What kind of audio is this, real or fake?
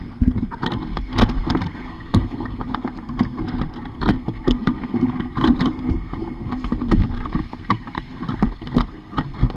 fake